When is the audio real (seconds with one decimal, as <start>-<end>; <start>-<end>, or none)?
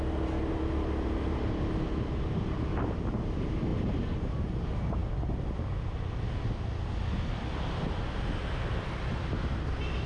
0.0-10.1